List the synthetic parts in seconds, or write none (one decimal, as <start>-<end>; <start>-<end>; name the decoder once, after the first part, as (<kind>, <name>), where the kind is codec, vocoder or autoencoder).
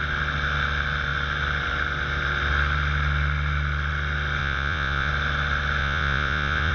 4.4-5.1 (vocoder, Vocos); 5.8-6.7